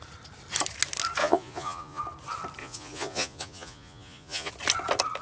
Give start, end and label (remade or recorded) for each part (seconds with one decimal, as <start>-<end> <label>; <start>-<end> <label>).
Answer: 0.0-1.2 recorded; 1.2-2.0 remade; 2.0-2.6 recorded; 2.6-4.5 remade; 4.5-5.2 recorded